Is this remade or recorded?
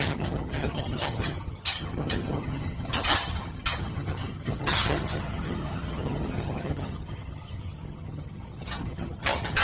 remade